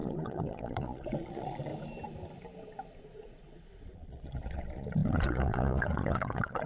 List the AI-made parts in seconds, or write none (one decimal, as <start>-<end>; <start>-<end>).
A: 0.0-1.7; 3.0-6.7